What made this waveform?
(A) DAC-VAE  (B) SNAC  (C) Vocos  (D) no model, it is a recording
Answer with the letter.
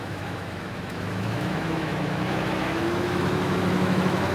A